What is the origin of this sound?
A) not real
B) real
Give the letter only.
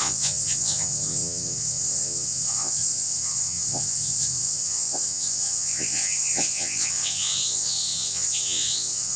A